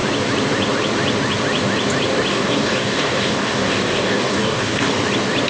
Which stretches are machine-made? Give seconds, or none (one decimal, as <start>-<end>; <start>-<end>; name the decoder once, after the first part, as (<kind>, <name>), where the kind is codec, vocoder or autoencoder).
2.3-4.9 (codec, DAC)